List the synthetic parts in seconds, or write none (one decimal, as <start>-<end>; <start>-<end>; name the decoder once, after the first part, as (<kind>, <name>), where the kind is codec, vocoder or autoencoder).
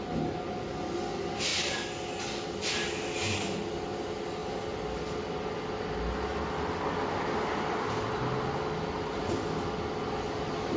none